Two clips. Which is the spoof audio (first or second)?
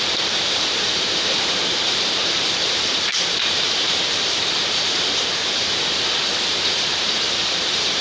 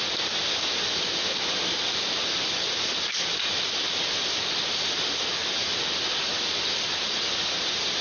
first